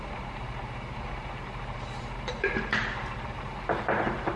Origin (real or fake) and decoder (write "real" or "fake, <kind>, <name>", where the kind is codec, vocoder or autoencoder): fake, vocoder, BigVGAN v2